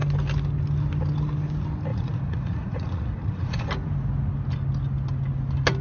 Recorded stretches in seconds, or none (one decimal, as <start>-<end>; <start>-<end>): 0.0-1.9; 3.7-5.8